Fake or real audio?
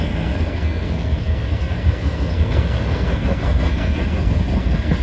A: fake